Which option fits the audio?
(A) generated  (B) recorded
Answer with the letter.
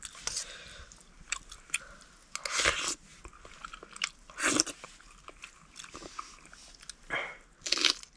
B